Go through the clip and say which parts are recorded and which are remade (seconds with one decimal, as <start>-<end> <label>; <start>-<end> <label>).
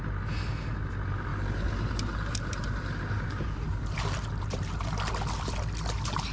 0.0-1.3 recorded; 1.3-5.1 remade; 5.1-6.3 recorded